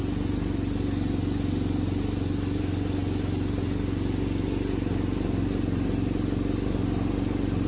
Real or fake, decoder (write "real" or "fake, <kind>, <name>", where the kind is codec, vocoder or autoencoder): real